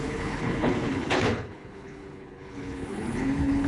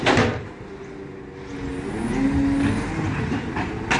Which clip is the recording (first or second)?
second